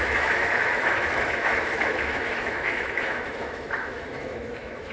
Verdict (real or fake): fake